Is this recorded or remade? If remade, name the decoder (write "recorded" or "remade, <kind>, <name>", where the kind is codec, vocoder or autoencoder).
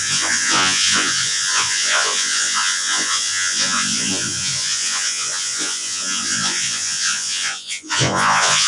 remade, vocoder, Vocos